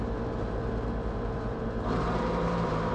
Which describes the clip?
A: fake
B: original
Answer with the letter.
A